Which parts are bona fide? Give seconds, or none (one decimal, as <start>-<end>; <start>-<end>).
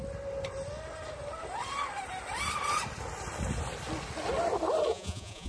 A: 0.0-4.9